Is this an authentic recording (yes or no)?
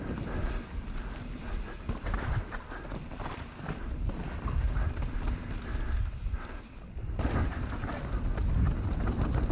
yes